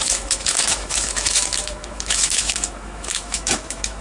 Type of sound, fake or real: fake